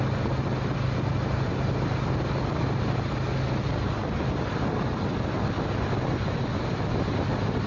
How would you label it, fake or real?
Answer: real